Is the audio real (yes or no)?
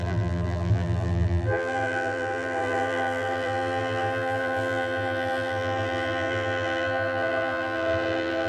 no